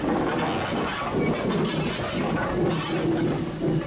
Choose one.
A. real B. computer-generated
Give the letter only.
A